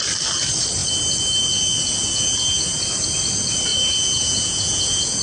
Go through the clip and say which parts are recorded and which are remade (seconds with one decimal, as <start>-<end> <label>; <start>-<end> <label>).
0.0-3.7 recorded; 3.7-5.2 remade